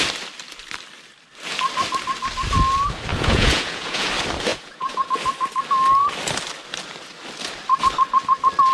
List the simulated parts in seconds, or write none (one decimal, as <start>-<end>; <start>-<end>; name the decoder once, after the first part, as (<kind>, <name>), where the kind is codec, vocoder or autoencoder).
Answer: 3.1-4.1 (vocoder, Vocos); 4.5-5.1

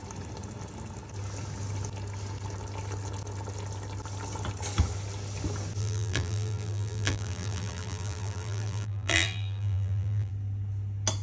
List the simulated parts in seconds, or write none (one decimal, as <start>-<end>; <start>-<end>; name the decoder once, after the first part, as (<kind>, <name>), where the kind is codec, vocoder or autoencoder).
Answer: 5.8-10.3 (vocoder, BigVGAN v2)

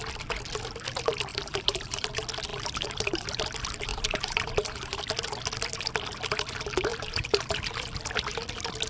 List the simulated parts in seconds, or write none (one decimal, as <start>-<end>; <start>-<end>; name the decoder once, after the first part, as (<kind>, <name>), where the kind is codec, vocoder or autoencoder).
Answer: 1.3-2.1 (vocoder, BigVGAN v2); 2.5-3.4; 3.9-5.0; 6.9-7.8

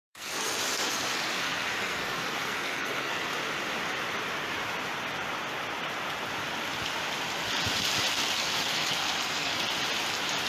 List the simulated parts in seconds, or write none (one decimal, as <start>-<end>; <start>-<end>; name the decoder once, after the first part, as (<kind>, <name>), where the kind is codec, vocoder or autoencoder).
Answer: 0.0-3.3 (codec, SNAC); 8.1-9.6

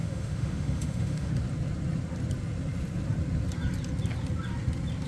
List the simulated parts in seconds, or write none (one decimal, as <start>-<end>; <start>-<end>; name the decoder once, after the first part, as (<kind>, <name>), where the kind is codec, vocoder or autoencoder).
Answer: 0.0-1.3 (autoencoder, DAC-VAE)

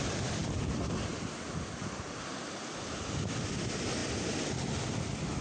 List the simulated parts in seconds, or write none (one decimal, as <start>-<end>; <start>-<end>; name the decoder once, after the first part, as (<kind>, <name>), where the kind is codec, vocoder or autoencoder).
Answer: none